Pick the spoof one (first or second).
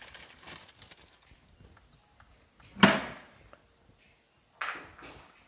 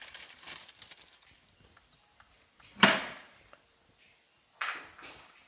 second